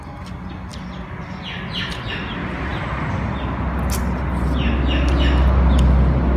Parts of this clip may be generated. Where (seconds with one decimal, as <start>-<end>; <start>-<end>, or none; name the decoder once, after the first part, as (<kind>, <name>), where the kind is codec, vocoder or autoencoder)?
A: 2.7-3.3 (vocoder, BigVGAN v2)